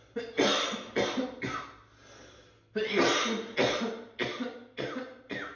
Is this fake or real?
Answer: real